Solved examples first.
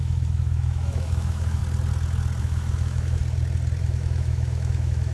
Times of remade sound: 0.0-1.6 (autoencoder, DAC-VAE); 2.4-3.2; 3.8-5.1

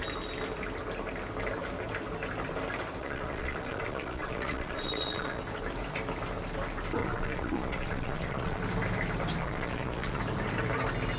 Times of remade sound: 3.0-5.4 (vocoder, Vocos); 7.0-8.6; 9.4-10.2

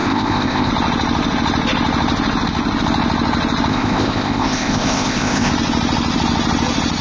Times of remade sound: 0.0-0.7 (codec, ZipCodec); 3.7-5.5

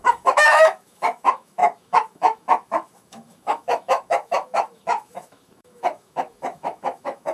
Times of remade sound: 0.0-7.3 (autoencoder, DAC-VAE)